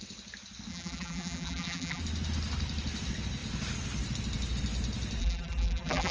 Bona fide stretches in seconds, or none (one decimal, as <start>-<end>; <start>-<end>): 0.0-0.7; 2.0-5.2